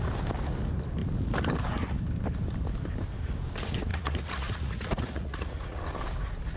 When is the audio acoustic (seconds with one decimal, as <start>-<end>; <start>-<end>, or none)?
0.0-3.9; 5.8-6.6